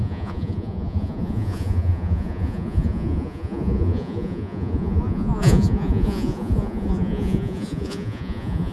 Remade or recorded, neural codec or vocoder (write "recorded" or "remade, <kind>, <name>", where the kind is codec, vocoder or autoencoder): remade, vocoder, Vocos